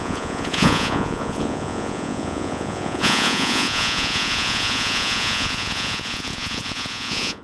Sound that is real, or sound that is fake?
fake